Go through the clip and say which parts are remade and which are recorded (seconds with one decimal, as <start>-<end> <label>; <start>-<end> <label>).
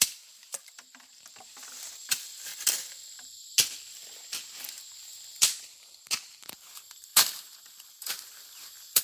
0.0-2.5 remade; 2.5-5.6 recorded; 5.6-9.0 remade